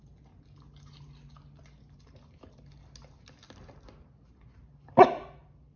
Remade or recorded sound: recorded